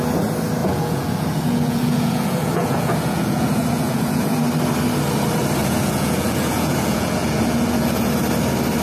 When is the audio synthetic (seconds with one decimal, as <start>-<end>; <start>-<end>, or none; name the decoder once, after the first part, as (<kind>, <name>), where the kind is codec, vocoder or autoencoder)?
0.6-4.4 (vocoder, Vocos); 5.6-8.2